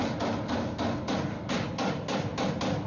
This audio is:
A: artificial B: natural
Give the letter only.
B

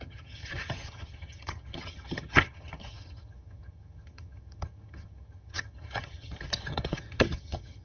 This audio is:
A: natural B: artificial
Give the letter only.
B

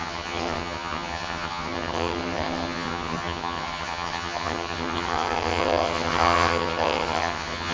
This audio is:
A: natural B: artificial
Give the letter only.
B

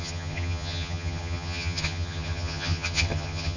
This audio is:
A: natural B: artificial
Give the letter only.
B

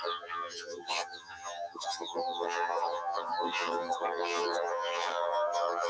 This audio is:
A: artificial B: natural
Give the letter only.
A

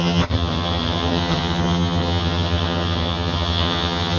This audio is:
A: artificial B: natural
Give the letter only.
A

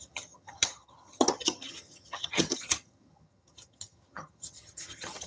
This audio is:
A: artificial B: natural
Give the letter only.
A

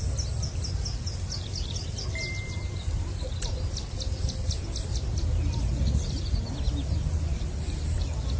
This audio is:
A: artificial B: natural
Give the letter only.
B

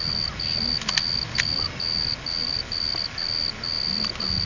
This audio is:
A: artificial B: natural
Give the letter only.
B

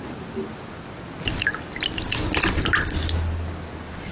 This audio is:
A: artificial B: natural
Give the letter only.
B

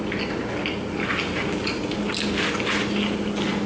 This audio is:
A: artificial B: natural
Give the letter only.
B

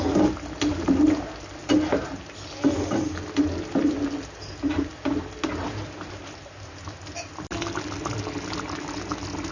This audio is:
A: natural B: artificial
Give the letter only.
A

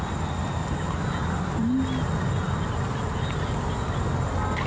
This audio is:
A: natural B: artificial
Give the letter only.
A